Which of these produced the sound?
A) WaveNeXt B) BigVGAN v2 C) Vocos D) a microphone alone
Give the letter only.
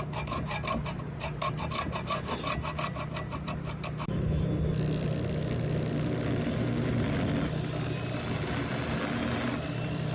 D